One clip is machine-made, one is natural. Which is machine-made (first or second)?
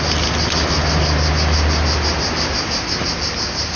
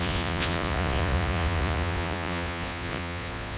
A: second